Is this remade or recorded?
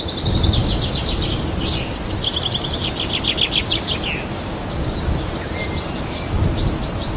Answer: recorded